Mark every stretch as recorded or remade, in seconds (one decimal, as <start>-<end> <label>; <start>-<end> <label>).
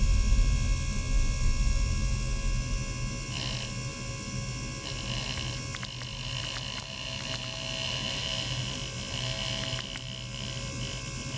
0.0-3.9 recorded; 3.9-6.4 remade; 6.4-11.4 recorded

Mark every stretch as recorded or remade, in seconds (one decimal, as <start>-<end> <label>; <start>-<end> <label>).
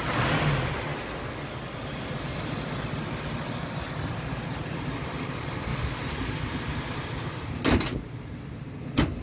0.0-9.2 recorded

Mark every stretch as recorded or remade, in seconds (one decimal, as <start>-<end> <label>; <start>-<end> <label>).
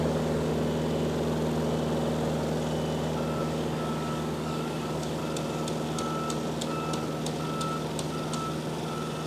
0.0-0.5 remade; 0.5-3.4 recorded; 3.4-5.2 remade; 5.2-9.3 recorded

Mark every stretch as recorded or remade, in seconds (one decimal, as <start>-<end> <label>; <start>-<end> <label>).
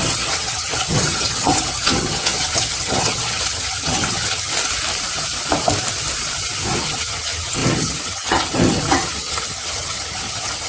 0.0-4.5 remade; 4.5-6.8 recorded; 6.8-10.7 remade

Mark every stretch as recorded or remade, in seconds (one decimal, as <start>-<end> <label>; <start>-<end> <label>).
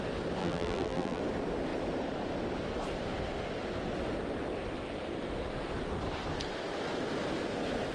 0.0-0.4 recorded; 0.4-1.2 remade; 1.2-7.9 recorded